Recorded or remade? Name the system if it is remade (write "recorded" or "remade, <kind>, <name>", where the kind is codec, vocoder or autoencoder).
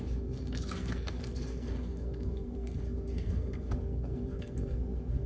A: remade, codec, SNAC